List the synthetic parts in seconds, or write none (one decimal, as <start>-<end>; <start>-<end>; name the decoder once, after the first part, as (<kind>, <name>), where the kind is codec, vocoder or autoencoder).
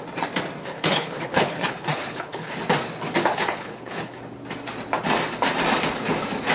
0.6-2.5 (codec, HILCodec); 3.3-4.2